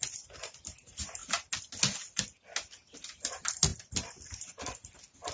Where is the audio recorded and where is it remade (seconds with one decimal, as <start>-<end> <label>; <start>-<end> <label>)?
0.0-5.3 recorded